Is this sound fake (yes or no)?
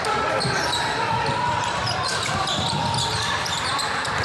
yes